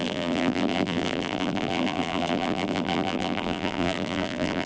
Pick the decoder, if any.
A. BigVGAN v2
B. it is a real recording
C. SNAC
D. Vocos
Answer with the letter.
A